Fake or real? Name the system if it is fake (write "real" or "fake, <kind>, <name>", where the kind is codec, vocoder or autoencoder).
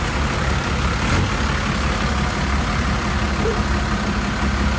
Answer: real